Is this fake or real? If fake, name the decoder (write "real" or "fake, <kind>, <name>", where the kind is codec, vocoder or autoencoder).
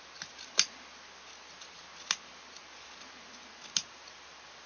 real